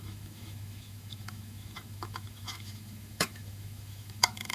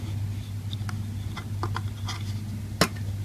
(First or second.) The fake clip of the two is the first